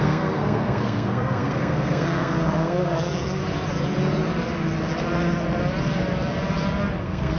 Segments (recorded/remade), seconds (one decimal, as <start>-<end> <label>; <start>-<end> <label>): 0.0-3.4 remade; 3.4-7.0 recorded; 7.0-7.4 remade